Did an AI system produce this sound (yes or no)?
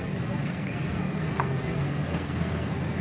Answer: yes